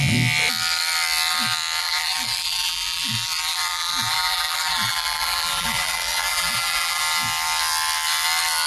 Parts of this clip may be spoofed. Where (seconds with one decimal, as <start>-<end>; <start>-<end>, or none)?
1.8-7.0